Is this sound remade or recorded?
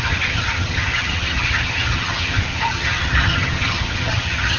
remade